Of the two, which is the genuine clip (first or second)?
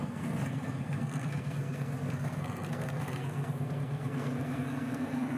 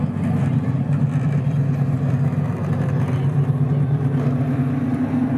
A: second